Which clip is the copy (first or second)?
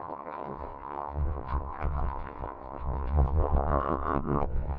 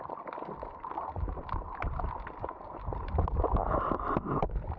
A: first